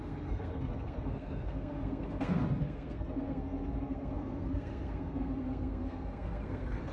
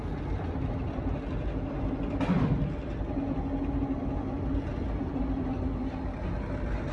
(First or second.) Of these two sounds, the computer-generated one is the first